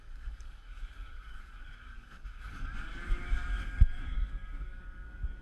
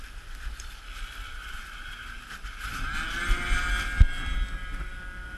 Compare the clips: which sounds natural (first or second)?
second